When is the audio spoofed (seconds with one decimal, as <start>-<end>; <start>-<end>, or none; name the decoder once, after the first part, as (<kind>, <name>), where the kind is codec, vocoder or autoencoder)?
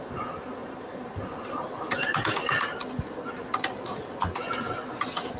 0.6-1.1 (vocoder, BigVGAN v2)